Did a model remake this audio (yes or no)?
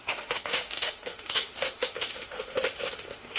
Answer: yes